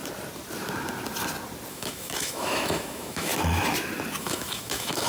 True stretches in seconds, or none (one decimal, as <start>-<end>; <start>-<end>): 0.0-1.7; 3.3-4.2